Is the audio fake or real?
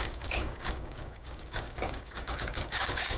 fake